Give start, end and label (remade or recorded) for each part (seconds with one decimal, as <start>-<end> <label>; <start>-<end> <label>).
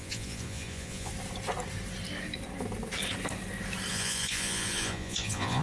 0.0-1.1 remade; 1.1-3.9 recorded; 3.9-5.6 remade